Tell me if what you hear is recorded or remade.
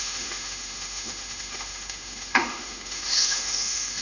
remade